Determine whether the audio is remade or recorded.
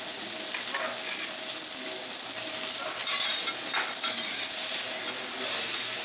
recorded